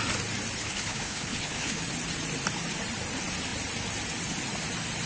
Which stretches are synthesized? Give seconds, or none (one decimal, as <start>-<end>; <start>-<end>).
0.6-1.8